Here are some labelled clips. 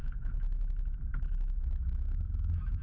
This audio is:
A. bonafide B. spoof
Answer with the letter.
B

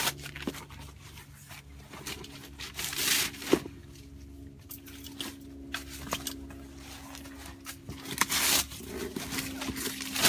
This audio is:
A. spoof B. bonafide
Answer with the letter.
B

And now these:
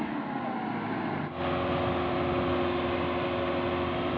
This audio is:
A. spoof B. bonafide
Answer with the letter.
B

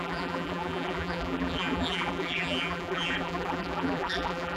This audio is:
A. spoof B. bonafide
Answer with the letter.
A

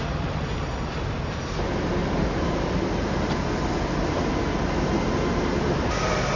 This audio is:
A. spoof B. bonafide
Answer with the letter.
B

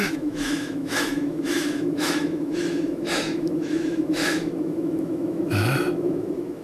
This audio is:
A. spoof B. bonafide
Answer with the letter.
A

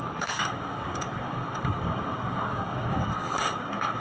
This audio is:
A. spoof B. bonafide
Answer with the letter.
A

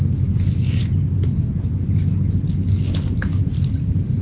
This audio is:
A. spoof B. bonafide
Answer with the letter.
B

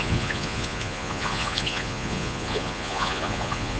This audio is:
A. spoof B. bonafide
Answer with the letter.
A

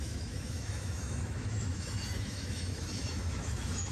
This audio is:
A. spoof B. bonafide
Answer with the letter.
A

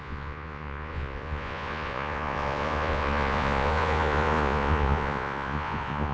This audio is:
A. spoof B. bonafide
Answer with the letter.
A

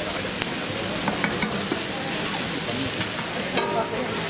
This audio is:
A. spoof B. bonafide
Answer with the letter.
B